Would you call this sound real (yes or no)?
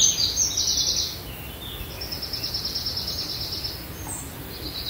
yes